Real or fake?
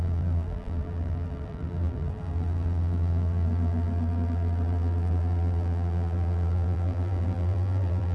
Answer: fake